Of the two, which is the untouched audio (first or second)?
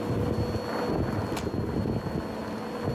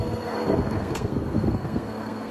first